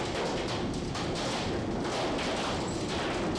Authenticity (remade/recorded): recorded